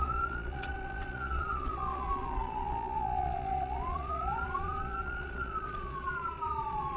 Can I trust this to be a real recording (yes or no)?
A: no